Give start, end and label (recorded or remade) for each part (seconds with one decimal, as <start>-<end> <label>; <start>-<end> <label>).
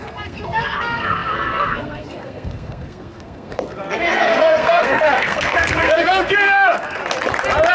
0.0-7.0 remade; 7.0-7.7 recorded